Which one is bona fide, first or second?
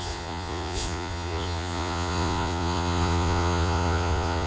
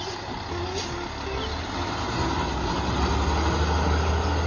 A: second